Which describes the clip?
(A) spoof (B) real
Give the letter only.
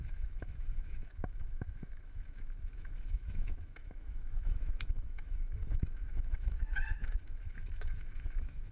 A